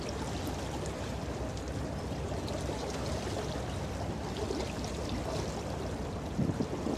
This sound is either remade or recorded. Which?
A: recorded